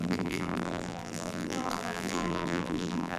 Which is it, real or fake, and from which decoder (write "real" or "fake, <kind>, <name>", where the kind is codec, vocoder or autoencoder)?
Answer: fake, vocoder, BigVGAN v2